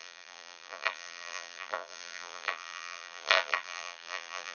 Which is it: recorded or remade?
remade